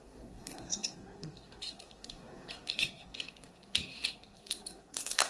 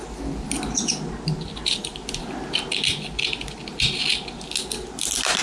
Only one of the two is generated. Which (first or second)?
first